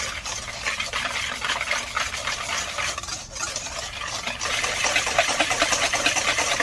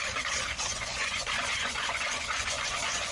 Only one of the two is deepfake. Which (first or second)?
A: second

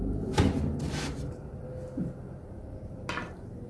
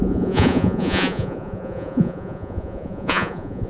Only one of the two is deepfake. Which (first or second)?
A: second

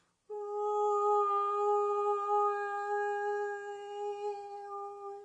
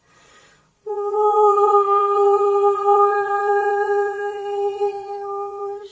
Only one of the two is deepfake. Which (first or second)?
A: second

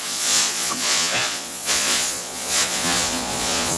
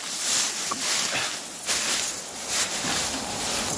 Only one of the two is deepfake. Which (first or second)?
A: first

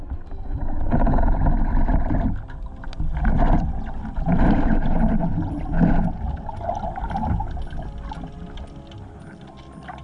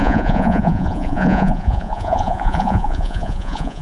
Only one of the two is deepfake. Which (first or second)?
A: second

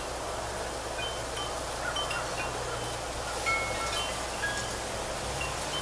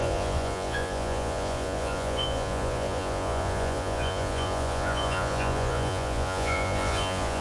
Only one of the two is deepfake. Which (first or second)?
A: second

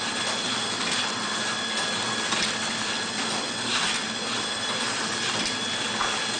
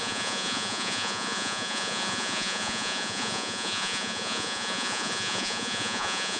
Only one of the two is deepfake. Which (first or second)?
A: second